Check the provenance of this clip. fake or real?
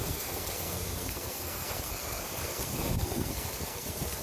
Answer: fake